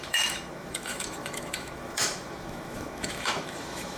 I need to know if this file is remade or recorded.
remade